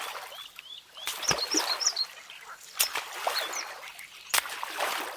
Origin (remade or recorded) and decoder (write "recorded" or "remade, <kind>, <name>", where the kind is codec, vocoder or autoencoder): recorded